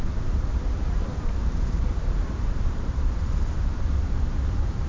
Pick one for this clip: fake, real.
fake